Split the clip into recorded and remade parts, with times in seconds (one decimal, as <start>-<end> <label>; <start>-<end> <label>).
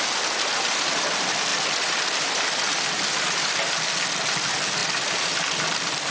0.0-1.5 recorded; 1.5-2.9 remade; 2.9-4.8 recorded; 4.8-6.1 remade